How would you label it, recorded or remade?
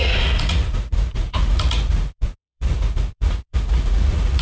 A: remade